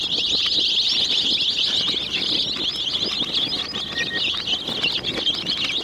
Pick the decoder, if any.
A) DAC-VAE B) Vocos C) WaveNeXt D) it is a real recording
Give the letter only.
D